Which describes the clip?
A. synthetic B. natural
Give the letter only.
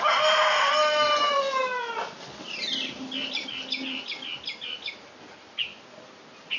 B